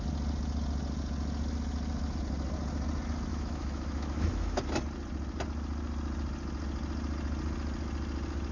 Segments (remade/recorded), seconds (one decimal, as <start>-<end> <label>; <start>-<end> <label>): 0.0-3.3 recorded; 3.3-4.6 remade; 4.6-8.5 recorded

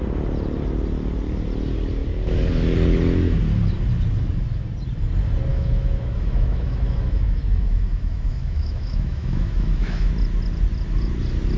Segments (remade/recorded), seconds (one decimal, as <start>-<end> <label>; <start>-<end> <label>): 0.0-5.5 recorded; 5.5-10.1 remade; 10.1-11.6 recorded

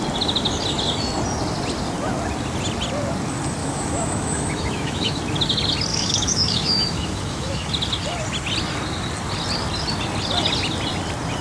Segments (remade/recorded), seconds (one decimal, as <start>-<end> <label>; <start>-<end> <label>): 0.0-3.6 recorded; 3.6-5.2 remade; 5.2-5.9 recorded; 5.9-7.7 remade; 7.7-11.4 recorded

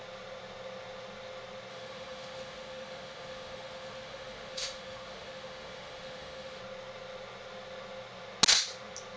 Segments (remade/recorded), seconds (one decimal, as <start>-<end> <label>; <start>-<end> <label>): 0.0-1.7 recorded; 1.7-6.6 remade; 6.6-9.2 recorded

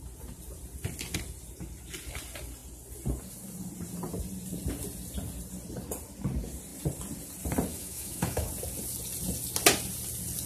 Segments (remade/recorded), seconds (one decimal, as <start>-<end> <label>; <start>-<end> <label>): 0.0-7.7 recorded; 7.7-8.5 remade; 8.5-10.5 recorded

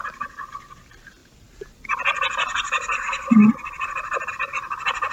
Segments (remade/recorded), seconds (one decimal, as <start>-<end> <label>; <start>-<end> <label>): 0.0-5.1 recorded

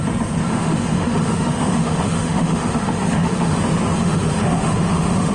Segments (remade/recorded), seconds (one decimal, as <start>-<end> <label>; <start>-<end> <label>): 0.0-0.5 recorded; 0.5-3.6 remade; 3.6-4.0 recorded; 4.0-5.3 remade

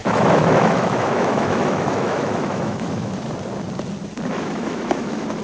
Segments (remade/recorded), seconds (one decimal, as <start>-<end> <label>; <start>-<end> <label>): 0.0-3.2 remade; 3.2-4.3 recorded; 4.3-5.4 remade